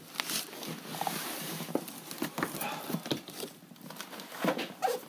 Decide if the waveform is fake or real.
real